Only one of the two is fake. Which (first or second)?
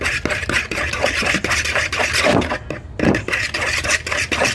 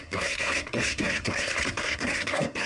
second